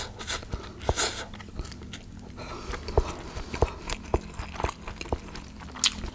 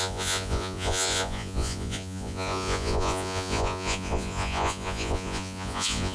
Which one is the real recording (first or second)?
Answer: first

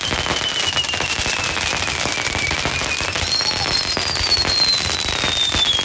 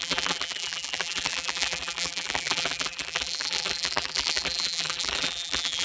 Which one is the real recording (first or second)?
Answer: first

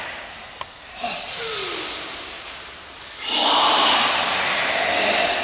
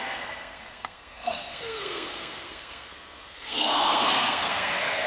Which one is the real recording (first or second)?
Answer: first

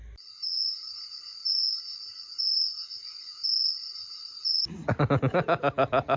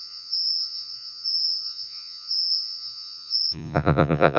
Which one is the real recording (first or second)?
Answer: first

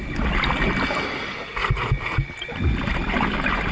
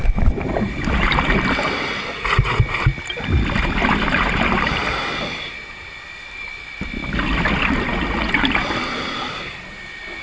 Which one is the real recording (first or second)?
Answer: first